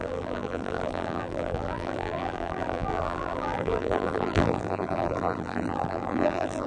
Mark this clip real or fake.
fake